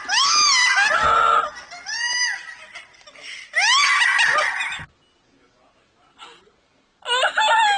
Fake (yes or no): no